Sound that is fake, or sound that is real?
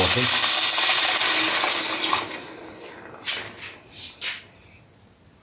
real